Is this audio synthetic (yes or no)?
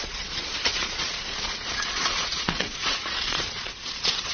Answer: yes